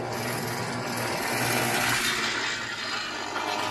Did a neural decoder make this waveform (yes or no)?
no